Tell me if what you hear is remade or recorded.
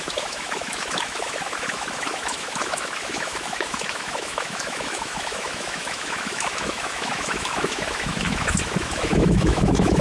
remade